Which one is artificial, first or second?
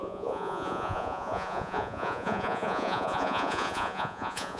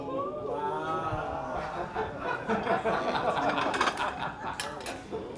first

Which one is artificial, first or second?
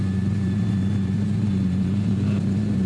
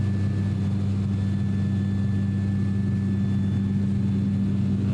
first